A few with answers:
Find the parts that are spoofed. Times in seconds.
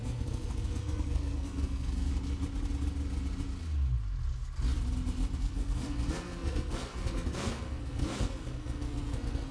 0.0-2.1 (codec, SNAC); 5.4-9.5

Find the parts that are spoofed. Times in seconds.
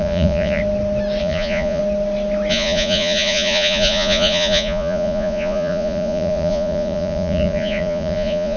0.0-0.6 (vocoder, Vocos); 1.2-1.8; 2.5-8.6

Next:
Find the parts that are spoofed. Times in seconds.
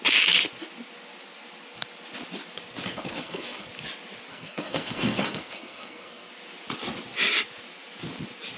2.9-3.7 (codec, SNAC); 4.3-6.3